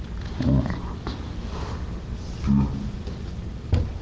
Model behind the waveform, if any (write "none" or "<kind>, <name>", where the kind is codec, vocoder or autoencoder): none